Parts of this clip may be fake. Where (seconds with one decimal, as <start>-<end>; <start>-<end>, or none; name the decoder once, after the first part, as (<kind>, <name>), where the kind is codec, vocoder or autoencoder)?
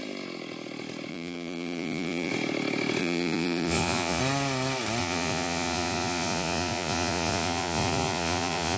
1.1-2.3 (vocoder, Vocos); 3.0-4.2; 5.0-8.8